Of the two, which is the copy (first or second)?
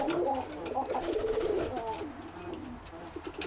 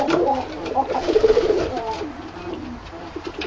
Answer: second